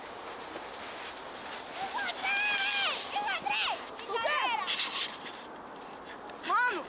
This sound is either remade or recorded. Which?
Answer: recorded